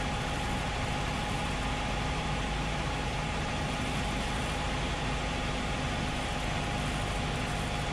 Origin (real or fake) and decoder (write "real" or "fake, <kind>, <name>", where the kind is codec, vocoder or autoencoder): real